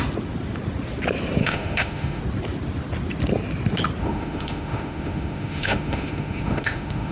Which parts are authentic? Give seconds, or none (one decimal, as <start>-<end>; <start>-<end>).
0.0-1.4; 2.2-4.0